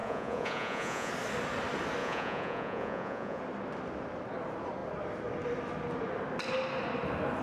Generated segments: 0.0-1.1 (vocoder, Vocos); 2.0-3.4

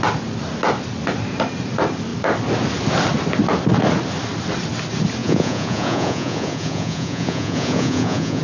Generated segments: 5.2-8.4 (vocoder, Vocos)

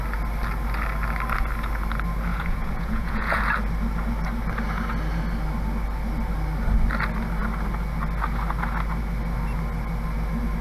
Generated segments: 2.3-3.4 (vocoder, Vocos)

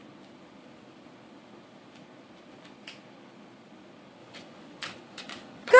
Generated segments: 4.2-5.8 (vocoder, Vocos)